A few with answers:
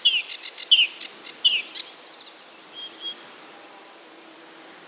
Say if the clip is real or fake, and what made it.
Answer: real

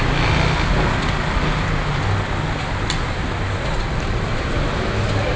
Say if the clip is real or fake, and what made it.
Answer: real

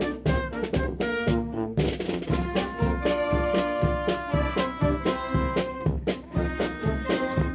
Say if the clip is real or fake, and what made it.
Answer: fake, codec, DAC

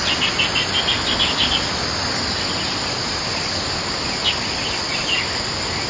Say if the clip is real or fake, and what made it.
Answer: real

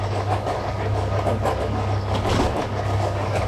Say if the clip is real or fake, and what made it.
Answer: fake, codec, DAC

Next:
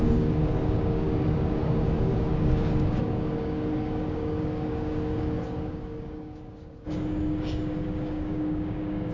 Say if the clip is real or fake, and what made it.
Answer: fake, codec, DAC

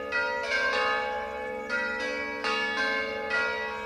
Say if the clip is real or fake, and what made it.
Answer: real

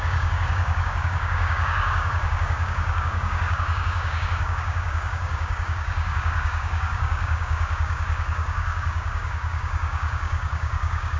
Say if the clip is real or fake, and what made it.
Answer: fake, codec, DAC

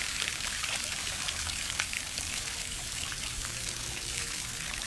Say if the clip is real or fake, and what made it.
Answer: fake, codec, DAC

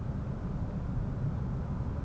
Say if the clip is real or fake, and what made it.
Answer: real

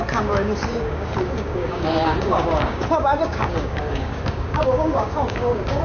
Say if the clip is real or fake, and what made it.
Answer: fake, codec, DAC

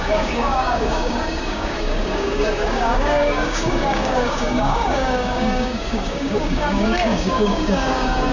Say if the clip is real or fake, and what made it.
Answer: fake, codec, DAC